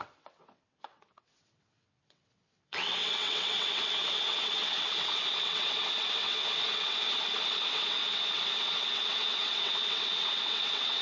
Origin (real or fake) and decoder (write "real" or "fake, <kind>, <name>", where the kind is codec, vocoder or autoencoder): fake, vocoder, WaveNeXt